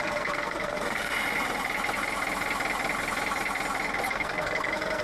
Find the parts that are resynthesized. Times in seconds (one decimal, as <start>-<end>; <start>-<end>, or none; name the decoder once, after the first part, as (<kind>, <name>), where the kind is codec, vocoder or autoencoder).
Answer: 0.0-1.1 (codec, SNAC); 4.1-5.0